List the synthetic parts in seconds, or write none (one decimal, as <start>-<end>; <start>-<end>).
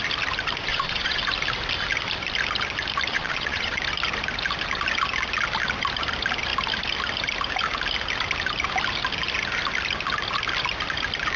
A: 0.7-1.2; 3.1-3.8